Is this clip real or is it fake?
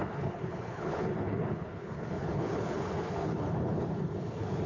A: fake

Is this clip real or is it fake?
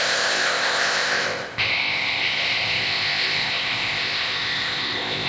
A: fake